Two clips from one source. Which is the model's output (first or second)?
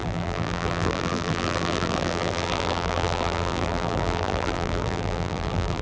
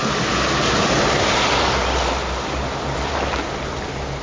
first